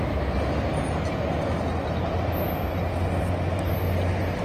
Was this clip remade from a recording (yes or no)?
no